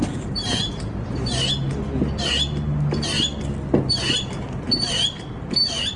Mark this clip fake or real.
real